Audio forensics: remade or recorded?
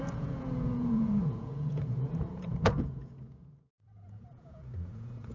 remade